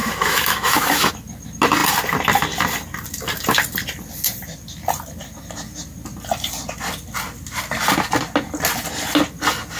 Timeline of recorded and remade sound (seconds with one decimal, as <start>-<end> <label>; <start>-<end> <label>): 0.0-1.1 remade; 1.1-9.8 recorded